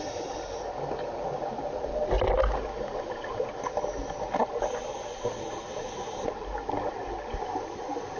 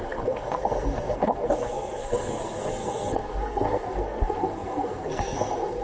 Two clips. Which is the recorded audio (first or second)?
first